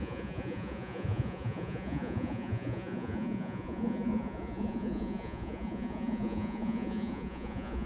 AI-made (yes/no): yes